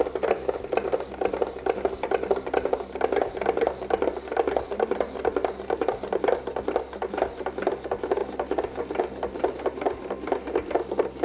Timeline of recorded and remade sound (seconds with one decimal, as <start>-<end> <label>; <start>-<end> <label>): 0.0-11.2 recorded